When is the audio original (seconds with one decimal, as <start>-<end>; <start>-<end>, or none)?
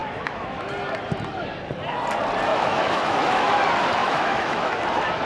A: 0.7-2.5; 3.5-4.0; 4.8-5.3